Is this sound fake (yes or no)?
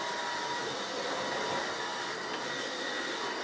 no